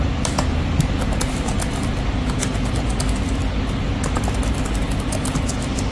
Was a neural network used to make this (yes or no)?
no